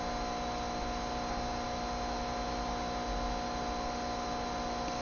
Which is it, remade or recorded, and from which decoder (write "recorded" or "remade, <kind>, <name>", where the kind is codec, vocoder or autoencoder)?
recorded